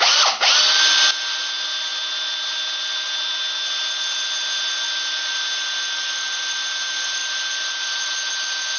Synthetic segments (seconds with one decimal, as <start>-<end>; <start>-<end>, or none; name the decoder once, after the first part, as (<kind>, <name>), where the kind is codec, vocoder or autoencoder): none